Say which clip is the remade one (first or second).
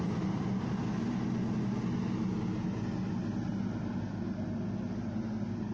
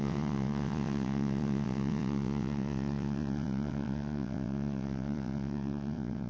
second